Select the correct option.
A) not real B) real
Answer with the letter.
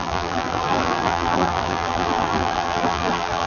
A